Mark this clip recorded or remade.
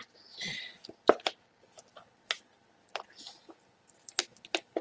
recorded